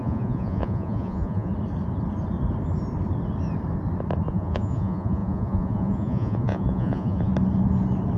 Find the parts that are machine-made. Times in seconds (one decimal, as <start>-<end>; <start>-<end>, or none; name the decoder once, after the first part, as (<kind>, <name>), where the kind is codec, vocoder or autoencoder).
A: 0.0-1.5 (vocoder, Vocos); 4.3-7.3